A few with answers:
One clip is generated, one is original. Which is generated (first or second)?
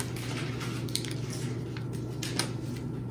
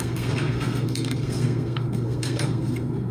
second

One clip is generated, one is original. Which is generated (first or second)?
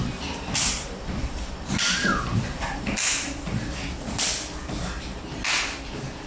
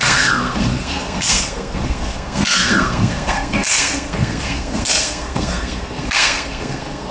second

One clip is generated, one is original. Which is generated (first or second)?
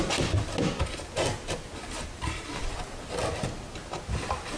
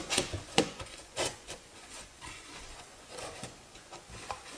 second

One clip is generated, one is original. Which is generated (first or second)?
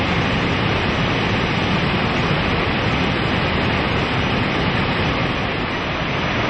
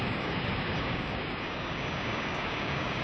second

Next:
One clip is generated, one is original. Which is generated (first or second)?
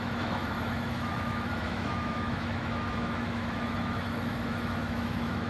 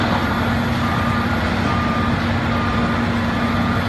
first